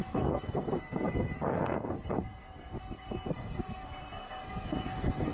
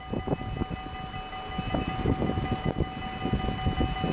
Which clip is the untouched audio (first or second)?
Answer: second